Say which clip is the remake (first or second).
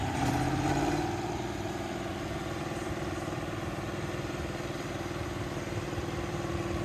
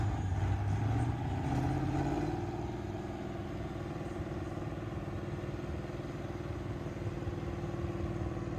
first